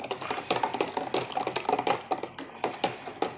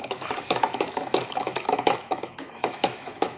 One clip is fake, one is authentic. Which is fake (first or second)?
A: second